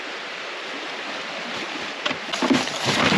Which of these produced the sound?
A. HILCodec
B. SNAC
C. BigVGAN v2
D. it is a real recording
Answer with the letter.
D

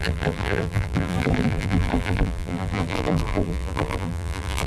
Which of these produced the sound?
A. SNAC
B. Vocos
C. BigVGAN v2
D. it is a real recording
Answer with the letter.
C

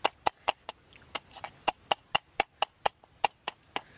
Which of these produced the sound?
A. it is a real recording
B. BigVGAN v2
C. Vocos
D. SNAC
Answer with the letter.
A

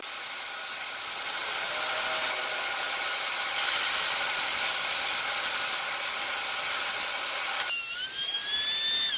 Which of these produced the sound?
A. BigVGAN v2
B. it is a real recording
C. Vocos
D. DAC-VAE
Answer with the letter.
B